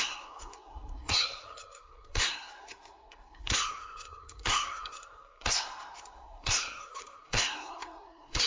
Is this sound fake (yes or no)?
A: yes